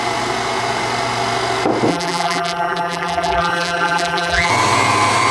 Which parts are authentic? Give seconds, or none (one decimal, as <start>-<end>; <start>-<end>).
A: 0.0-1.9; 4.5-5.3